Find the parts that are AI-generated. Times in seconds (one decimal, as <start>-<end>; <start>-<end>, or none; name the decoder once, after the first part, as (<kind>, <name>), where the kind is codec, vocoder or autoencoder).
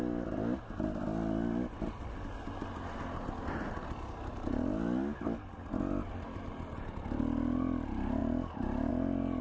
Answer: none